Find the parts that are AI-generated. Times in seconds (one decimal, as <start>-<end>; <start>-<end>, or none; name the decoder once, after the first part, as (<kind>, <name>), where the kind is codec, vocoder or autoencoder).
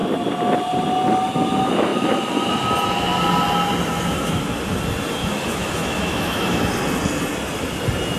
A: 3.9-4.4 (autoencoder, DAC-VAE); 5.2-6.6